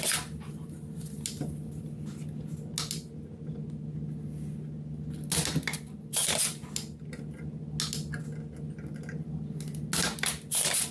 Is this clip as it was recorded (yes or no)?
yes